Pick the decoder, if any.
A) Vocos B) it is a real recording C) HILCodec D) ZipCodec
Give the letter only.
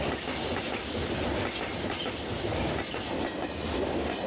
B